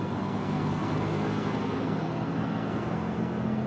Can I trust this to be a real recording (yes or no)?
no